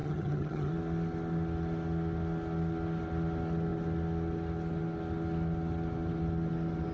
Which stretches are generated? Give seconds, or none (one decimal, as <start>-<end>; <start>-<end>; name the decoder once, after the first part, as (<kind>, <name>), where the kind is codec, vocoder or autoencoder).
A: 0.0-0.7 (vocoder, HiFi-GAN)